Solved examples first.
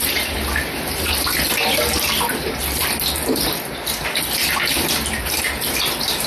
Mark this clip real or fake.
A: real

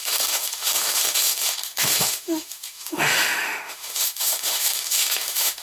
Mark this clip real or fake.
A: fake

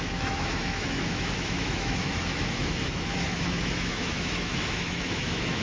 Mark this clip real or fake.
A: fake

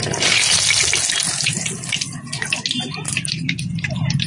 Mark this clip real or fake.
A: real